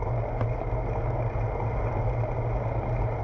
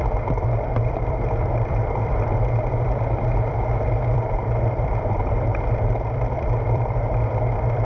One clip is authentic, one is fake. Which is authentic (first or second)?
first